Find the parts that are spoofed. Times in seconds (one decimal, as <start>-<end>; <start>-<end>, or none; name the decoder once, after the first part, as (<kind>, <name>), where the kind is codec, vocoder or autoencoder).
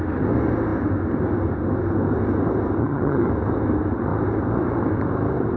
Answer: 2.8-3.3 (vocoder, HiFi-GAN)